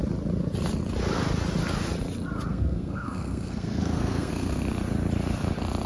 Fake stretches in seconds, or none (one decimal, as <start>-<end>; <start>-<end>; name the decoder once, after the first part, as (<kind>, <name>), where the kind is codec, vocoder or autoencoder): 2.5-4.6 (codec, SNAC)